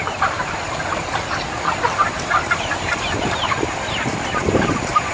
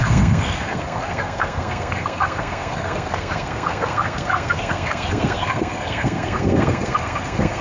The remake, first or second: second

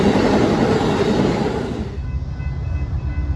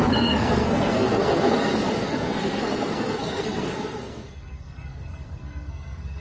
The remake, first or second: second